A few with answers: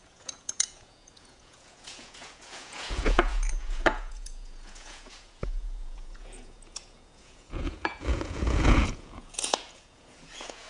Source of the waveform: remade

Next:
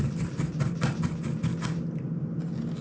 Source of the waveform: recorded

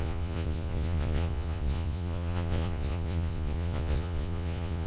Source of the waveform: remade